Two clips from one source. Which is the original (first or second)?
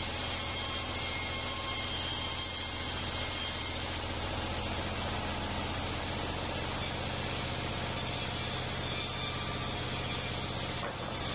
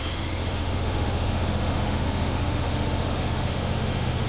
first